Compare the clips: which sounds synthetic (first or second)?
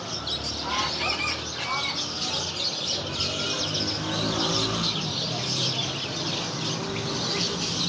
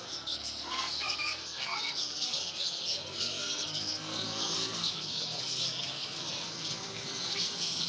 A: second